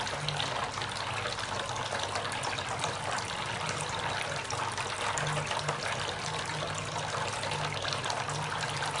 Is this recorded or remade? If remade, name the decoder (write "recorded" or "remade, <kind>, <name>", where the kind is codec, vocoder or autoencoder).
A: recorded